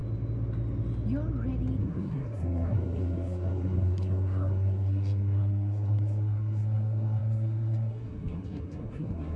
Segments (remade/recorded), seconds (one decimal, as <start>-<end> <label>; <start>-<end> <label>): 0.0-1.8 recorded; 1.8-9.4 remade